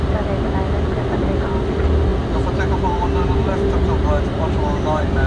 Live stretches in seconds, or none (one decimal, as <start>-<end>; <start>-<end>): 0.0-5.3